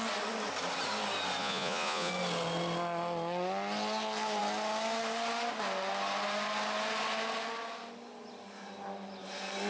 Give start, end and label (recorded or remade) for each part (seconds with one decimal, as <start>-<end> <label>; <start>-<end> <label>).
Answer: 0.0-1.4 recorded; 1.4-2.1 remade; 2.1-9.7 recorded